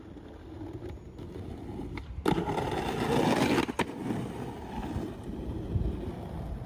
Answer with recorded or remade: recorded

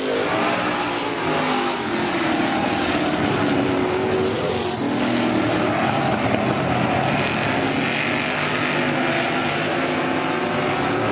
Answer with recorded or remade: recorded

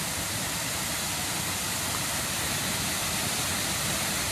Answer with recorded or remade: recorded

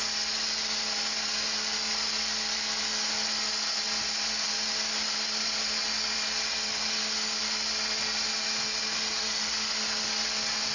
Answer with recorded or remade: recorded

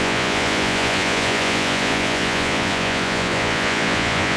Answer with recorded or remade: remade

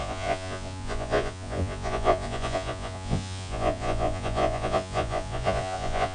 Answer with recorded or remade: remade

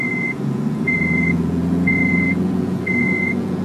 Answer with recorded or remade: remade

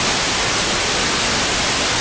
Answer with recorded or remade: recorded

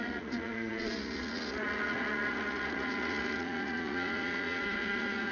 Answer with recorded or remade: remade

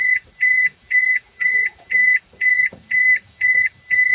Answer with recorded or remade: remade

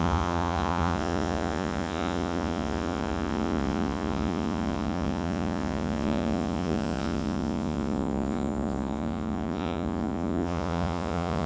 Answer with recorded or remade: remade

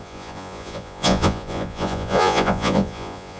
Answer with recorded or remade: remade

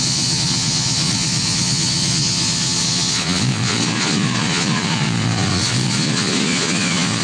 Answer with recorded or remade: remade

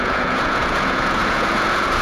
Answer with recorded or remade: remade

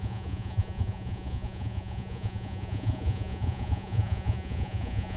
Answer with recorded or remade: remade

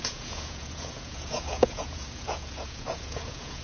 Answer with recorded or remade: remade